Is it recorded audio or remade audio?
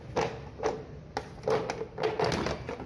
recorded